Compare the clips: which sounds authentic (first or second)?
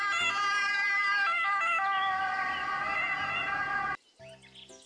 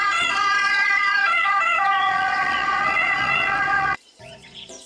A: first